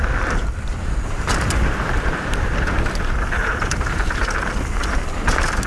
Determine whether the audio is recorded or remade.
recorded